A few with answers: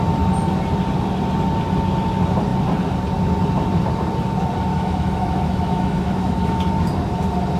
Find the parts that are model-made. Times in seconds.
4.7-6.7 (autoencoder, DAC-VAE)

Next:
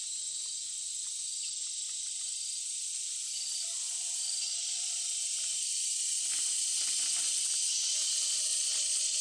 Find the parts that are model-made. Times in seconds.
8.5-9.2 (vocoder, Vocos)

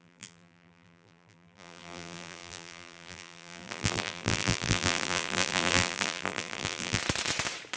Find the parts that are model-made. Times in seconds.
0.0-7.0 (vocoder, BigVGAN v2)

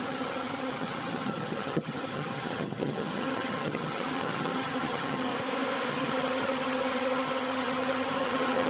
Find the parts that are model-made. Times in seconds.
0.0-5.3 (vocoder, HiFi-GAN); 5.9-8.7